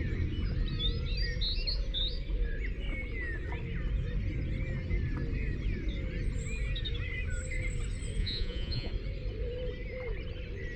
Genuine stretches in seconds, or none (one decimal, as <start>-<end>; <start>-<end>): 0.0-8.2; 8.9-10.8